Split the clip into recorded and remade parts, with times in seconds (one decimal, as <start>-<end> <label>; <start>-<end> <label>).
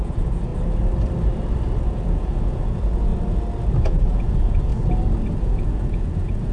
0.0-0.5 remade; 0.5-1.8 recorded; 1.8-3.1 remade; 3.1-3.8 recorded; 3.8-4.7 remade; 4.7-5.4 recorded; 5.4-6.5 remade